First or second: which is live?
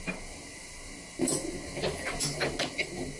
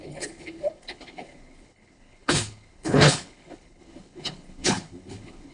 first